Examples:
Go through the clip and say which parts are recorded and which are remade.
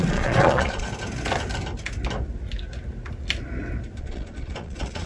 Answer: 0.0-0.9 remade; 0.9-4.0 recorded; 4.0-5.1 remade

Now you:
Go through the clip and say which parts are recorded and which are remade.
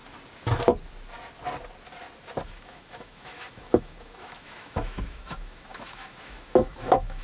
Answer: 0.0-2.5 recorded; 2.5-7.2 remade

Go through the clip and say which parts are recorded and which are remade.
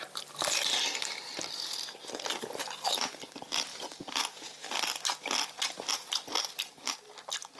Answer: 0.0-7.6 recorded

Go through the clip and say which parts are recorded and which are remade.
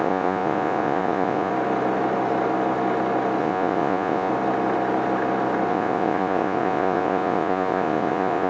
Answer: 0.0-1.5 remade; 1.5-3.4 recorded; 3.4-4.3 remade; 4.3-5.7 recorded; 5.7-8.5 remade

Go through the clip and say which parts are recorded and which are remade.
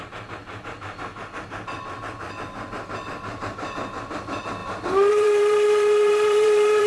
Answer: 0.0-0.4 remade; 0.4-3.1 recorded; 3.1-6.9 remade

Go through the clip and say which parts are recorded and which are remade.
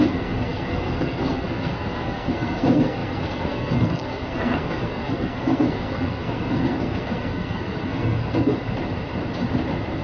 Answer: 0.0-8.5 remade; 8.5-10.0 recorded